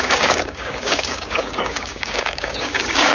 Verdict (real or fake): fake